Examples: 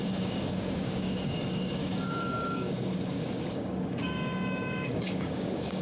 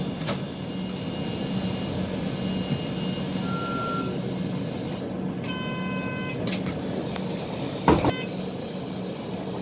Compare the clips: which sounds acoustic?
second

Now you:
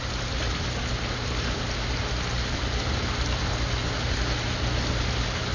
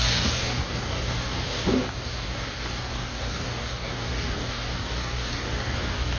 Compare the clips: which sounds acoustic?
first